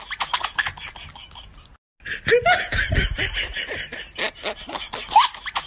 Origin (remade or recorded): recorded